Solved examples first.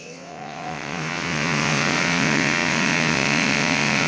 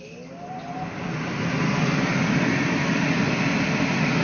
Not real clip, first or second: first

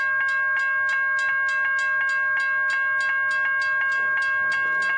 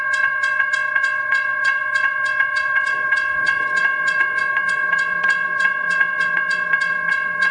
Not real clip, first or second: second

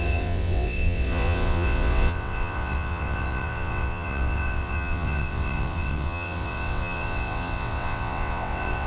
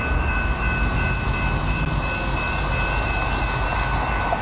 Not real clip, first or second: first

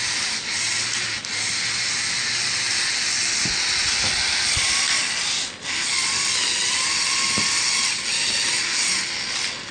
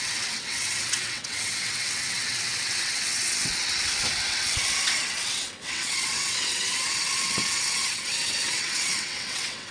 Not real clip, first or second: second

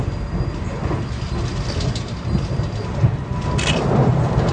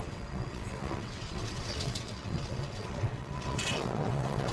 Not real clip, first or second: second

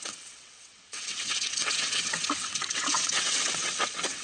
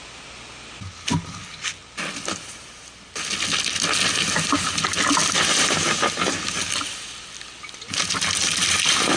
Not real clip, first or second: first